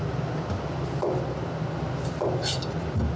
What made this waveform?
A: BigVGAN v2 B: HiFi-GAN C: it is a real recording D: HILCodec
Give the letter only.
C